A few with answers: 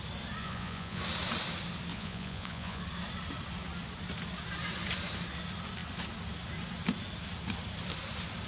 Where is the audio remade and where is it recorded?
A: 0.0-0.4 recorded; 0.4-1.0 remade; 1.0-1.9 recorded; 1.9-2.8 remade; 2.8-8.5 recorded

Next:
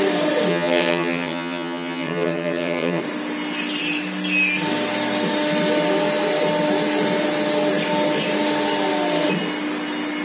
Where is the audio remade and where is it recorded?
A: 0.0-0.5 recorded; 0.5-3.0 remade; 3.0-10.2 recorded